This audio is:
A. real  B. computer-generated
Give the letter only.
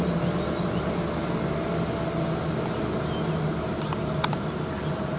A